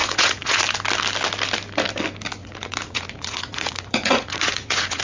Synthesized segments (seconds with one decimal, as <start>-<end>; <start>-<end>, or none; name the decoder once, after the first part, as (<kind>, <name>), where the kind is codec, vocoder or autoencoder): 0.0-0.6 (vocoder, Vocos); 2.4-5.0